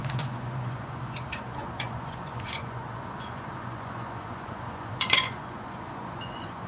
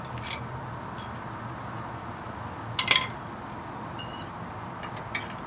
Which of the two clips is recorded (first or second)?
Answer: second